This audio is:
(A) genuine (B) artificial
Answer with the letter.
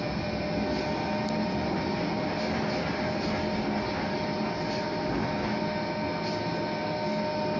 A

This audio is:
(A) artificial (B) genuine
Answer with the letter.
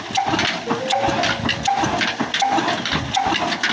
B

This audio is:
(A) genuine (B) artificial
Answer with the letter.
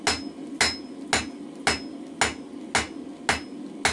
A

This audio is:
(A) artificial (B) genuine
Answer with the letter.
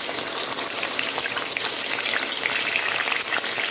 B